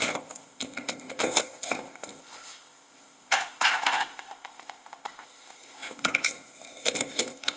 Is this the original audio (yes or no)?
no